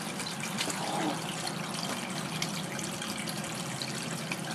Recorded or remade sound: remade